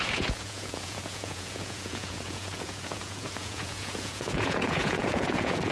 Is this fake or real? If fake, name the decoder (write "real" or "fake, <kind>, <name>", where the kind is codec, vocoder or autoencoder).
fake, vocoder, Vocos